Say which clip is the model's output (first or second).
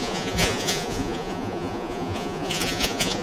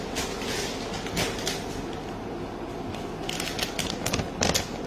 first